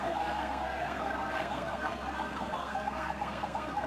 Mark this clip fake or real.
fake